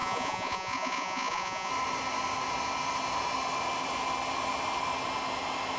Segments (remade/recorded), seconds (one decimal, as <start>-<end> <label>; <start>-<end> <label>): 0.0-1.7 remade; 1.7-5.8 recorded